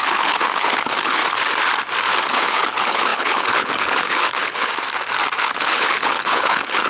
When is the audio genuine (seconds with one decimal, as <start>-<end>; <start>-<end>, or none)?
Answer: 1.2-2.3; 4.7-5.4